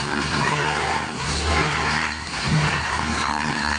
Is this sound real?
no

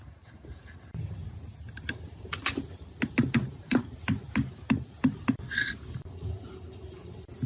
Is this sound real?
yes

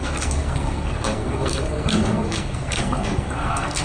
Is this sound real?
no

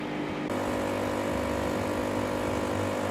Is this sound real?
yes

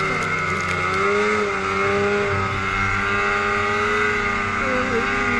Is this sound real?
yes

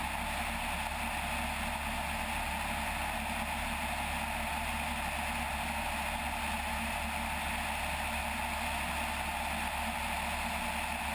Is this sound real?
yes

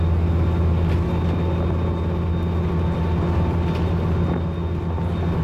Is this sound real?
yes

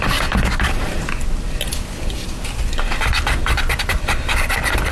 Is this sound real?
no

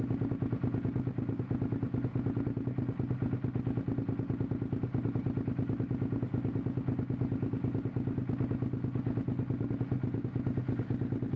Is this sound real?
yes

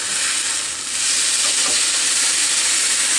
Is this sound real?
yes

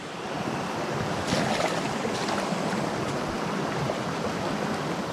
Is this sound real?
yes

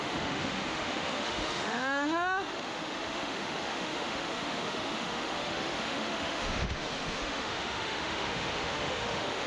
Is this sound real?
no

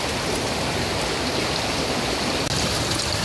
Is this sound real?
yes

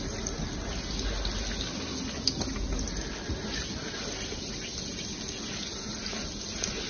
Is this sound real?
yes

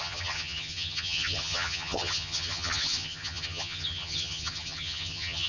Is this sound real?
no